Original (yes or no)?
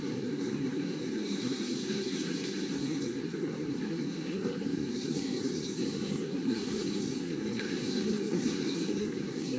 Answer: no